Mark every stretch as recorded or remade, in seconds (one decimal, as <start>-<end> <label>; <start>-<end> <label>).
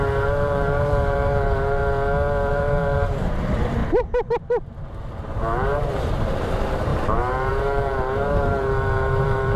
0.0-1.8 remade; 1.8-2.5 recorded; 2.5-3.8 remade; 3.8-5.4 recorded; 5.4-9.6 remade